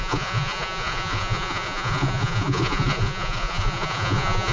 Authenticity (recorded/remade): remade